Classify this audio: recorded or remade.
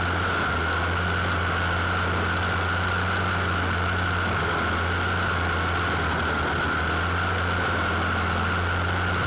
recorded